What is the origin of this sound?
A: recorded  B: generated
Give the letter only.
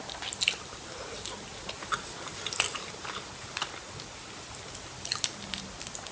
A